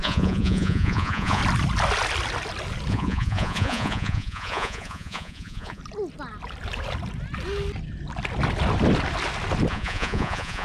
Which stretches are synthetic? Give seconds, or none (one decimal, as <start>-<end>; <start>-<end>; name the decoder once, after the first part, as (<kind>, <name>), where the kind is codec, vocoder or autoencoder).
0.0-1.4 (vocoder, Vocos); 2.9-5.8; 9.7-10.6